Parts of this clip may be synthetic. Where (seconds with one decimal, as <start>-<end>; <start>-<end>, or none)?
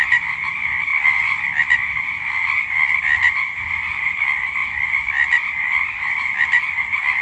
none